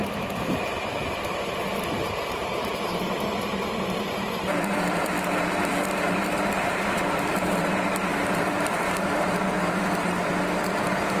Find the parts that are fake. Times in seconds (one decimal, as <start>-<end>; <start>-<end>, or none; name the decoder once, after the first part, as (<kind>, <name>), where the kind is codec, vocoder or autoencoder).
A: 0.0-11.2 (vocoder, BigVGAN v2)